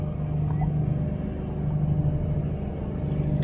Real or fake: real